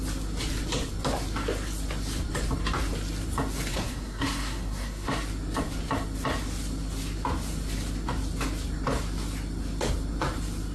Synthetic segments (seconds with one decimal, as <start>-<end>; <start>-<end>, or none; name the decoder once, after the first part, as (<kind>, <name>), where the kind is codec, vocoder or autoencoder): 3.7-5.1 (codec, SNAC)